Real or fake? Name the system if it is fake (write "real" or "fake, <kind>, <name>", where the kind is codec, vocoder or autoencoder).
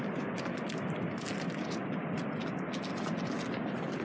real